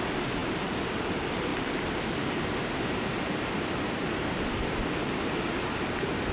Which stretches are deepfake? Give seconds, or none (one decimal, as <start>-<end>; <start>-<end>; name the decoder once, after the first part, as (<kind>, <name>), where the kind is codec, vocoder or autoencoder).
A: none